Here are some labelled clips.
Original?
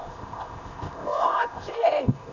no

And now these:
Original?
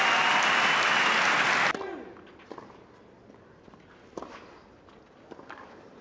yes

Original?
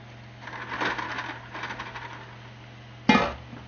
yes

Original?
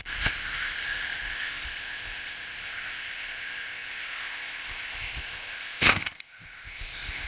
no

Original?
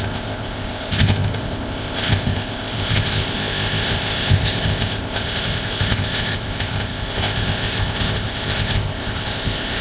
no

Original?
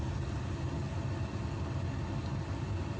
yes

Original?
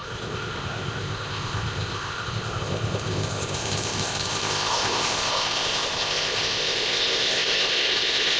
no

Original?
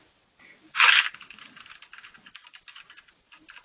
yes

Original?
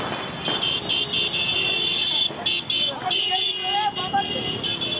yes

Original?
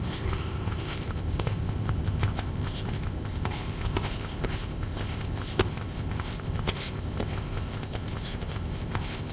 no